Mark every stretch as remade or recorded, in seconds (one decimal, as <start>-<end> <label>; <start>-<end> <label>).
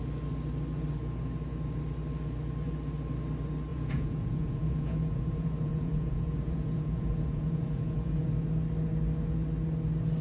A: 0.0-3.7 recorded; 3.7-8.3 remade; 8.3-10.2 recorded